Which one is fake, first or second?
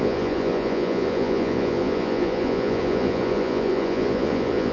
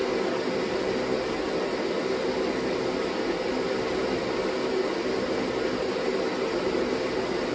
first